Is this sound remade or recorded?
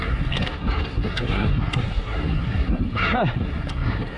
remade